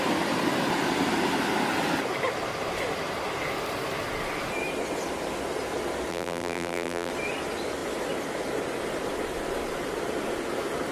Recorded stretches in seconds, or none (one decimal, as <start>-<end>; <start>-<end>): 0.0-6.1; 7.1-10.9